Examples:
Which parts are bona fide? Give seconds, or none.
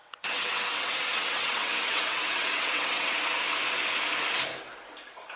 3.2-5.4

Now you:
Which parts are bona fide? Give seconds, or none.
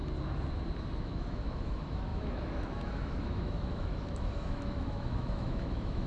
0.0-1.0